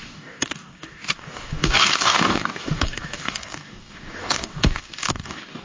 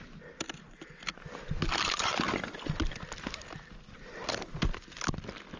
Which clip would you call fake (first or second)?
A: first